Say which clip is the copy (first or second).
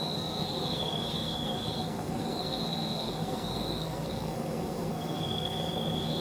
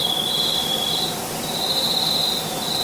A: first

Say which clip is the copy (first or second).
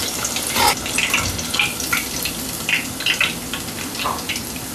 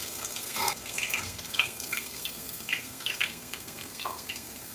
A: second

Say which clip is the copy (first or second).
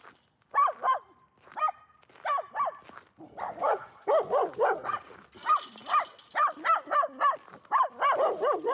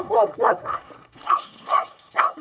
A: second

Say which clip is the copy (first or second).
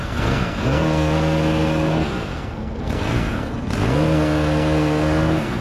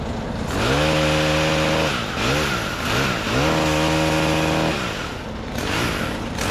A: first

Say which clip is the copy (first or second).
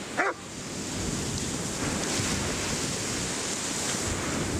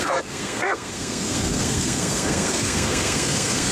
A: second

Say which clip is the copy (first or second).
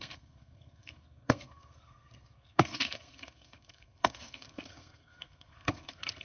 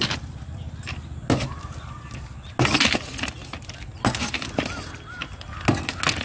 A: first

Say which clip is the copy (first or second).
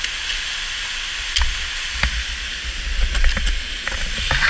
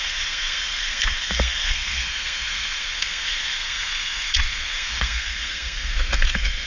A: second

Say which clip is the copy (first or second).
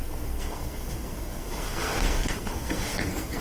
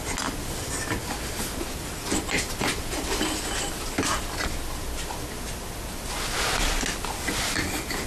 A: first